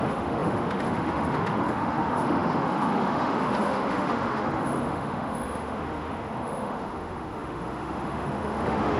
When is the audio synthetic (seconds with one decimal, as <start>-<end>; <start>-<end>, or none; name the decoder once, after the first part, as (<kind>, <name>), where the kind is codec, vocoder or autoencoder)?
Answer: 0.0-9.0 (autoencoder, DAC-VAE)